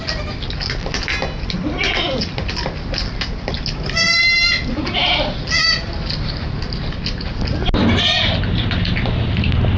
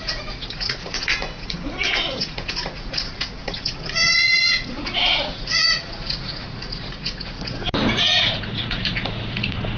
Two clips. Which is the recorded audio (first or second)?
first